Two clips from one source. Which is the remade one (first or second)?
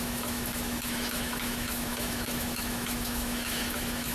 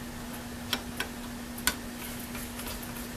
first